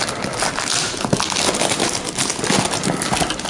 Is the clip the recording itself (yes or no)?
yes